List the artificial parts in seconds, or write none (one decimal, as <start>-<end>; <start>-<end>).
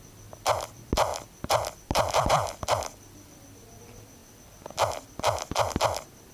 1.1-3.8